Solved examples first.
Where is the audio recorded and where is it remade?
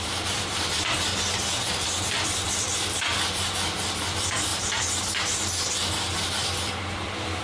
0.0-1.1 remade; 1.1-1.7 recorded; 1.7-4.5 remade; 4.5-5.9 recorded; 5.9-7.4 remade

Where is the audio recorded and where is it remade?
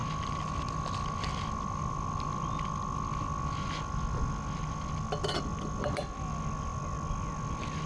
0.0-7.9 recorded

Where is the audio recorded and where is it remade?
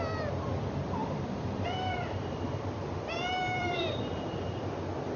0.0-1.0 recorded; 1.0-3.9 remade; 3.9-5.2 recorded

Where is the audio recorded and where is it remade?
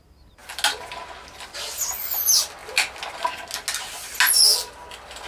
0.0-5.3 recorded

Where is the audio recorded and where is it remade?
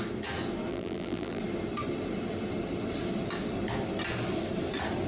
0.0-0.7 recorded; 0.7-1.4 remade; 1.4-5.1 recorded